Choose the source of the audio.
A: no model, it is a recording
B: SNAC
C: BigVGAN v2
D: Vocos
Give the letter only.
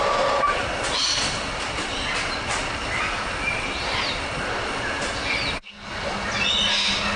A